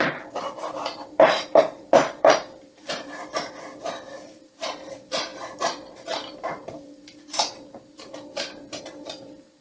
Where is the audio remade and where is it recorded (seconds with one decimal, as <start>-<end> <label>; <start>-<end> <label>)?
0.0-9.6 remade